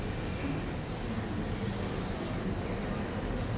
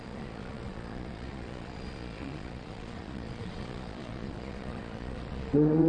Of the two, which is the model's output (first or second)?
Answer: second